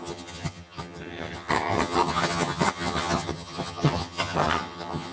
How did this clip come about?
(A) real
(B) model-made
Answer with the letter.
B